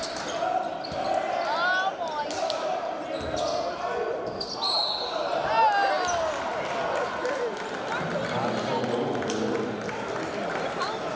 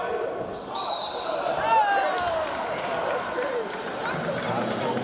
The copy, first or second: second